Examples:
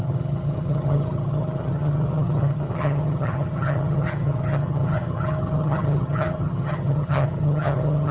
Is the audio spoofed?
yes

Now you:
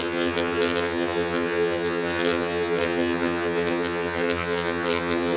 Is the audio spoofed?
yes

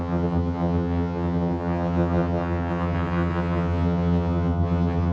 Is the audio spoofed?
yes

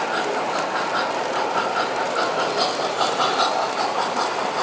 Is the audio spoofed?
no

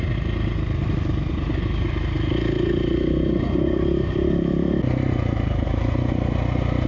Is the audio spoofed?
no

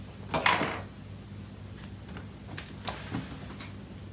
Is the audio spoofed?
no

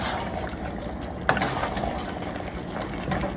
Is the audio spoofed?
no